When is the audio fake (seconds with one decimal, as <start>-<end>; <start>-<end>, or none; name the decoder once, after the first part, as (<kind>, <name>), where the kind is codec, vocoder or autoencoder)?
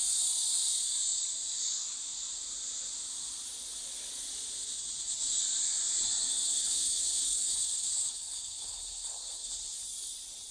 6.5-9.5 (codec, HILCodec)